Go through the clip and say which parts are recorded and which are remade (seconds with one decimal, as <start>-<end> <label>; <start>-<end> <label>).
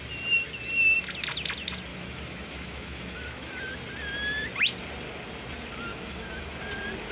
0.0-1.9 recorded; 1.9-3.6 remade; 3.6-5.9 recorded; 5.9-6.6 remade; 6.6-7.1 recorded